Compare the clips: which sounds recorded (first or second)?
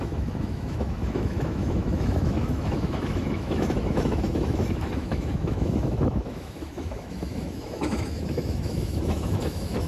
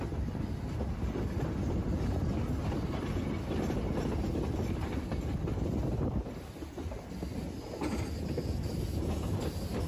second